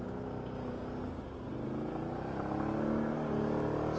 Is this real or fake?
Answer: real